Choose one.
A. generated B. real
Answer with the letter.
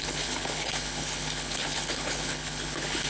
A